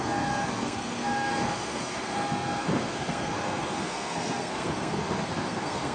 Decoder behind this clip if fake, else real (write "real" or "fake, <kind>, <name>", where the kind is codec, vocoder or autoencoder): fake, codec, SNAC